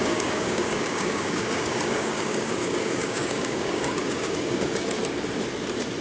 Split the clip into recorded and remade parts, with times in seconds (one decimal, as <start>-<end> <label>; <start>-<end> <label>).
0.0-5.0 remade; 5.0-6.0 recorded